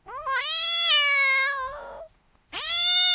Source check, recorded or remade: remade